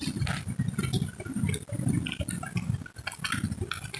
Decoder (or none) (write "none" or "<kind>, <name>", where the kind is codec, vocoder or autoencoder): none